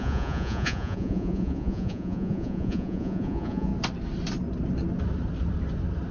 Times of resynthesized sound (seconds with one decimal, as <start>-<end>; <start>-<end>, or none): 0.0-3.7